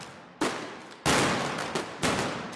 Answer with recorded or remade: recorded